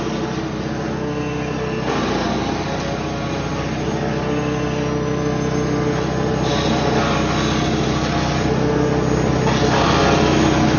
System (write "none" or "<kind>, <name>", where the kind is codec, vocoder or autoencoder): none